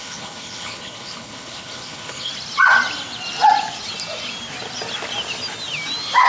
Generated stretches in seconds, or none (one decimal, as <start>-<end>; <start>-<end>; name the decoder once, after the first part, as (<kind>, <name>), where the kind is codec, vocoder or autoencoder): 0.0-2.3 (codec, HILCodec)

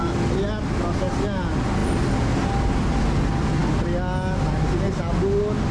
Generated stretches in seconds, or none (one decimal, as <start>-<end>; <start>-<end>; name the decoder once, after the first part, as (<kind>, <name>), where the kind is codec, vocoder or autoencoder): none

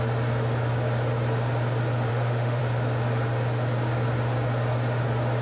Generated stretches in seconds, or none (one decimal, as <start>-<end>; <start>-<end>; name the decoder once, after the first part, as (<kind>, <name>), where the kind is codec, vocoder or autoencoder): 2.1-2.6 (autoencoder, DAC-VAE)

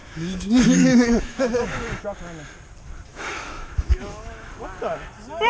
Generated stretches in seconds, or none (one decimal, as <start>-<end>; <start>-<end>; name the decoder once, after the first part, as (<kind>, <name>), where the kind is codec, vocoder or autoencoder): 0.0-2.0 (autoencoder, DAC-VAE); 3.1-4.5

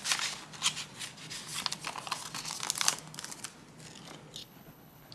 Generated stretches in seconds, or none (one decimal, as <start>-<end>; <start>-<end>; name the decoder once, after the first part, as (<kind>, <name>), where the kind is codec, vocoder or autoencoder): 4.4-5.1 (codec, HILCodec)